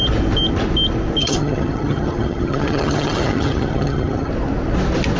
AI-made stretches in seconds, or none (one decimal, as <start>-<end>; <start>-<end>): 1.2-4.3